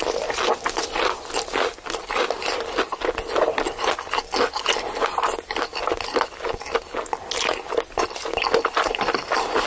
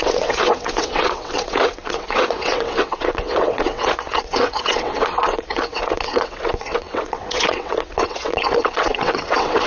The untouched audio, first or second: first